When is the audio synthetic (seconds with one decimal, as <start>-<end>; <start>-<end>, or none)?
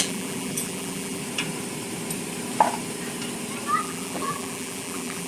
0.0-1.2; 3.8-5.3